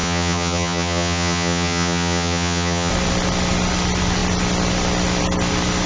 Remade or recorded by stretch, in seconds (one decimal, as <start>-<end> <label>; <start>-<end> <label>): 0.0-2.9 remade; 2.9-5.9 recorded